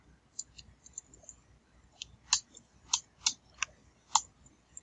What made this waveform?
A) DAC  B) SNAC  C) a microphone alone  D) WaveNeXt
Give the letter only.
C